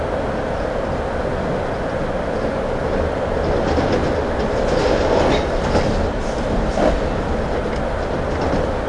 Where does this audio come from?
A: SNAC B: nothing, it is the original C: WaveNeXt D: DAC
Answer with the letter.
B